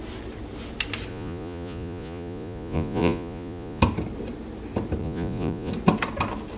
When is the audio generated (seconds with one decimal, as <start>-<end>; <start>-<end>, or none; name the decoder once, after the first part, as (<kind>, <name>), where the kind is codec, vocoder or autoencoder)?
1.1-3.8 (vocoder, Vocos); 5.0-5.7